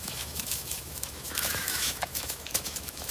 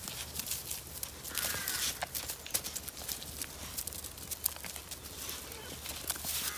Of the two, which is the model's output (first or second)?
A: first